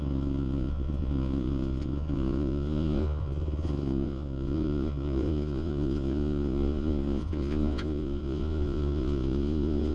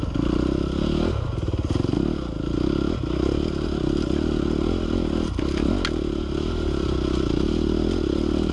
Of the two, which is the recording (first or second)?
second